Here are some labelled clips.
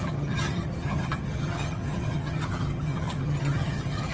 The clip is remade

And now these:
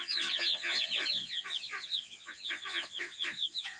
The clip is remade